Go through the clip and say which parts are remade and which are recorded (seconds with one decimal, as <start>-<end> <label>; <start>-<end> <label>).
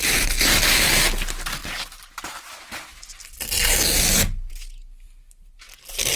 0.0-6.2 recorded